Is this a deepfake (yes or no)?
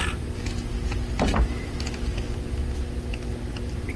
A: no